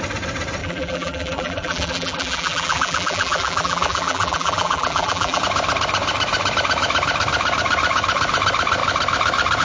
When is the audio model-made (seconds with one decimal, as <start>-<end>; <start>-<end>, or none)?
0.6-5.4